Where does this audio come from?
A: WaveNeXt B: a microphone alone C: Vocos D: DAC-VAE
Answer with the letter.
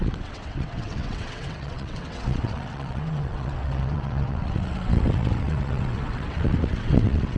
A